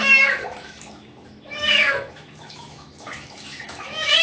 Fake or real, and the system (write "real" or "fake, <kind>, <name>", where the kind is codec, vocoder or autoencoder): fake, autoencoder, DAC-VAE